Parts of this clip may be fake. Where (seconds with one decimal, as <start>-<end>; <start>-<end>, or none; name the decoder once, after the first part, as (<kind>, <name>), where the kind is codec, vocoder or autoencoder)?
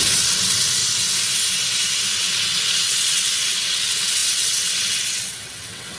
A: 0.0-0.8 (vocoder, WaveNeXt); 2.1-6.0